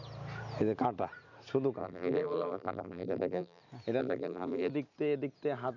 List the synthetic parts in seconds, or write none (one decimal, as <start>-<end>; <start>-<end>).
1.8-3.6; 4.0-4.7